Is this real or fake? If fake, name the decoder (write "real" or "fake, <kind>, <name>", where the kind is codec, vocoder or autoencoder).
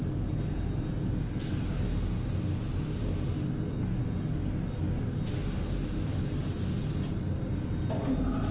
real